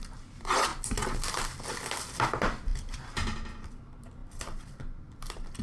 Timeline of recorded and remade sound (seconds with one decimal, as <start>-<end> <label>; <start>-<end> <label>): 0.0-0.7 remade; 0.7-2.0 recorded; 2.0-5.6 remade